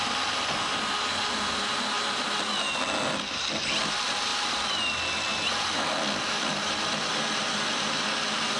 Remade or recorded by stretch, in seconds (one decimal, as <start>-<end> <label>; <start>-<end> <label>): 0.0-8.6 recorded